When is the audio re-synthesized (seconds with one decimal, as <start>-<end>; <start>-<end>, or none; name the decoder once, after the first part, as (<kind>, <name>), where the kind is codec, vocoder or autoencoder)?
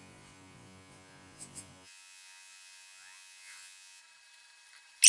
0.0-4.0 (vocoder, Vocos)